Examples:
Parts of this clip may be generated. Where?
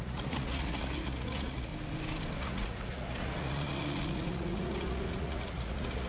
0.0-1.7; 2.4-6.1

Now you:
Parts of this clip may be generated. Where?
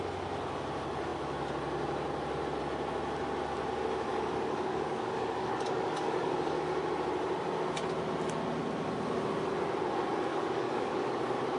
4.1-6.7; 10.3-11.2